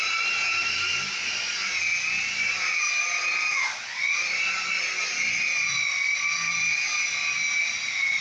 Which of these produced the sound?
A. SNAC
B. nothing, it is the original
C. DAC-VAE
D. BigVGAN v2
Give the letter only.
B